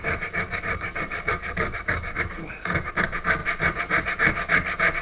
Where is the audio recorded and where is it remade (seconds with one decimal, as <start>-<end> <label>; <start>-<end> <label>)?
0.0-2.9 remade; 2.9-5.0 recorded